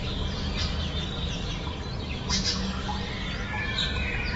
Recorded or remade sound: recorded